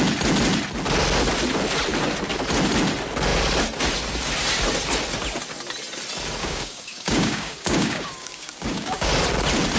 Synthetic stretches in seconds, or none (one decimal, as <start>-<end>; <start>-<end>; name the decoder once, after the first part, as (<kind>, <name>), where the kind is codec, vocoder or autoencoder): 6.4-9.1 (codec, DAC)